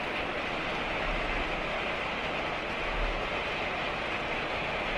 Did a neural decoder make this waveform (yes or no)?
no